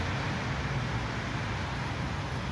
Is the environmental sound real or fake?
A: real